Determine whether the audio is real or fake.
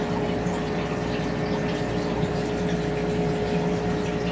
real